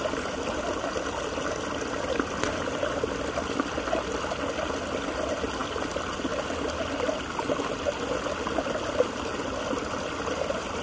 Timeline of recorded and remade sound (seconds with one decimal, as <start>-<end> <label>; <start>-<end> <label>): 0.0-10.8 recorded